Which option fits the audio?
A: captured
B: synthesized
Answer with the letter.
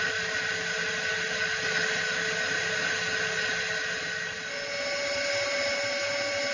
A